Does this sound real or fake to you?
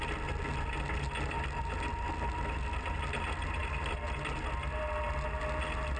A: real